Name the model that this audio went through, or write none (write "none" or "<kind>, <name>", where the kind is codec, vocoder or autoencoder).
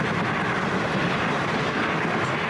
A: none